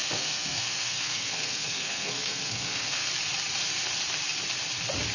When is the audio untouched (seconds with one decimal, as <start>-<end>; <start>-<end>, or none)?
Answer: 3.1-5.1